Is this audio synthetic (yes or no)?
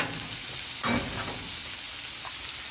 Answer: no